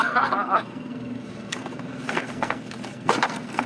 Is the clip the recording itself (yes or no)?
no